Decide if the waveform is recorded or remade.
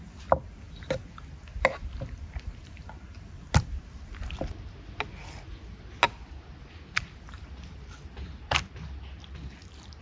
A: recorded